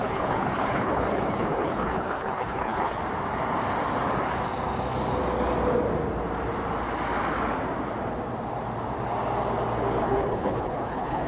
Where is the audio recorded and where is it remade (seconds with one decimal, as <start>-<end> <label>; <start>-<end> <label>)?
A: 0.0-3.0 remade; 3.0-10.0 recorded; 10.0-11.3 remade